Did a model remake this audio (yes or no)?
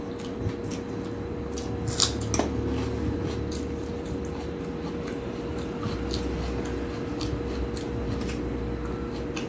no